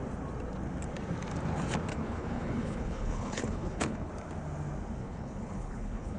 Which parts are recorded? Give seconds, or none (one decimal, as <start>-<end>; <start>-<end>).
0.0-1.9; 4.1-5.0